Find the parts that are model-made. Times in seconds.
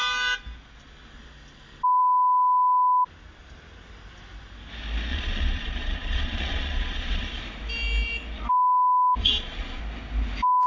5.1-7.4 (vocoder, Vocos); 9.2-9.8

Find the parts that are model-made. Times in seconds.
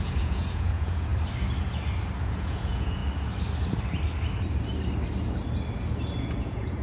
0.0-1.1 (vocoder, Vocos); 2.2-3.0; 6.2-6.8